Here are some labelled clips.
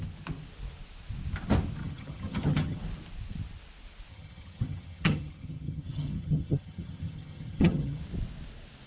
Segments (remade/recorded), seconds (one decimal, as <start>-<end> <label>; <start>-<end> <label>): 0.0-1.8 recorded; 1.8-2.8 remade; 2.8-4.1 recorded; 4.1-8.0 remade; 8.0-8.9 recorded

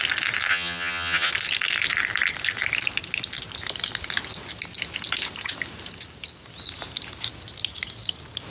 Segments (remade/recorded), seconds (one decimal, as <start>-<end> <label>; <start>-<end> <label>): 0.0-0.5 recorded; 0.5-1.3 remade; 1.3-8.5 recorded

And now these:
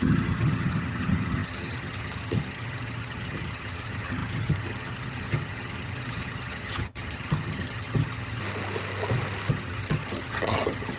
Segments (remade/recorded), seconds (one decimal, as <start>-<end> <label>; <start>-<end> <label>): 0.0-8.4 remade; 8.4-9.5 recorded; 9.5-11.0 remade